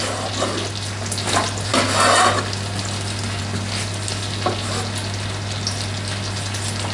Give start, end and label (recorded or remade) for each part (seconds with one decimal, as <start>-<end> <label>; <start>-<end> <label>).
0.0-6.9 recorded